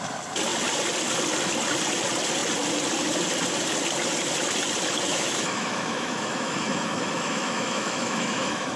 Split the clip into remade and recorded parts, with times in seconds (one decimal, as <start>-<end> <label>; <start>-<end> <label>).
0.0-5.1 recorded; 5.1-8.8 remade